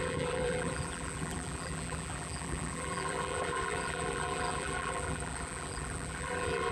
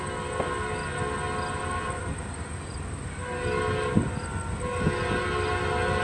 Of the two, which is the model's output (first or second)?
first